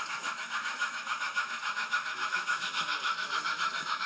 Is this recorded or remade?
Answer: remade